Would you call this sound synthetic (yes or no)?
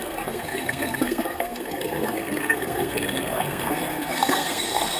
yes